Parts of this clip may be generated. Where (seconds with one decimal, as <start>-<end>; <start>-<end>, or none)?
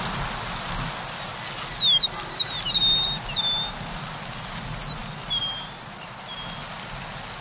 none